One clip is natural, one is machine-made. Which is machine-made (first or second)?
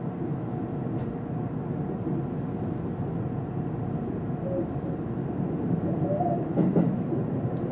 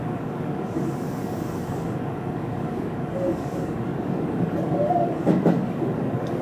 second